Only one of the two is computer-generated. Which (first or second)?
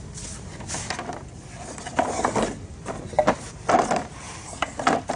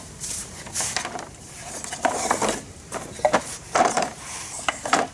second